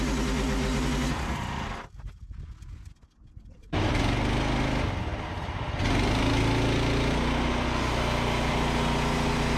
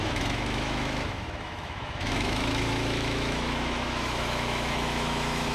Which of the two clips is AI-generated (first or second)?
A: second